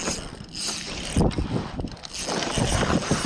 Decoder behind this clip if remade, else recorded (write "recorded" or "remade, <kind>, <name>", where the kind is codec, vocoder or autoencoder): recorded